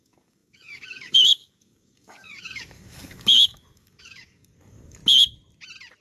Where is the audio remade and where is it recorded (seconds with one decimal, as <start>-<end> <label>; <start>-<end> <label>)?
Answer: 0.0-5.0 remade; 5.0-6.0 recorded